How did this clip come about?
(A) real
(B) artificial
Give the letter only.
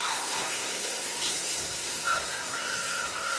B